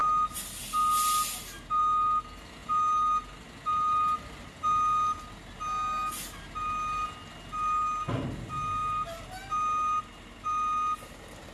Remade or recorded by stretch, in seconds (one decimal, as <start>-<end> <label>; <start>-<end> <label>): 0.0-11.5 recorded